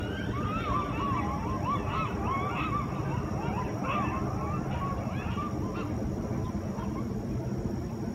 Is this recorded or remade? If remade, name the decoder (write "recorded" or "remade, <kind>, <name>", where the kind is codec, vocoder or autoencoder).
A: recorded